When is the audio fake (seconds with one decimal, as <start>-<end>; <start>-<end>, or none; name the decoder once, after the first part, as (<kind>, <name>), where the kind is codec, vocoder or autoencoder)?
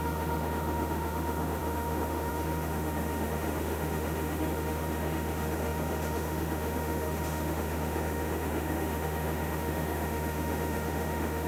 0.0-11.5 (autoencoder, DAC-VAE)